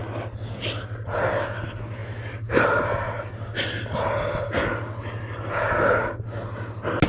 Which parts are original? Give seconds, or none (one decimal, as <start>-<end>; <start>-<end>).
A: 0.0-7.1